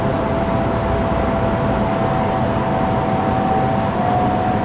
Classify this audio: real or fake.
real